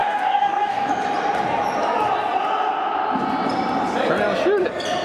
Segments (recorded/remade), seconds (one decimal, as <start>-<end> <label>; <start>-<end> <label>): 0.0-0.9 remade; 0.9-5.0 recorded